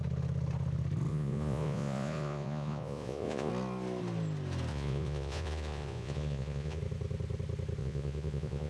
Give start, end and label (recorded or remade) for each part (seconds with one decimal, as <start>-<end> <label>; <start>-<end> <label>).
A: 0.0-1.1 recorded; 1.1-3.5 remade; 3.5-4.7 recorded; 4.7-6.8 remade; 6.8-7.8 recorded; 7.8-8.7 remade